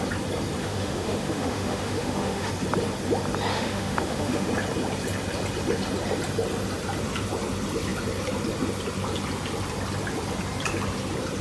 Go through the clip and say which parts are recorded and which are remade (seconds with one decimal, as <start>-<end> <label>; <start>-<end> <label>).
0.0-0.6 recorded; 0.6-2.5 remade; 2.5-3.5 recorded; 3.5-4.5 remade; 4.5-11.4 recorded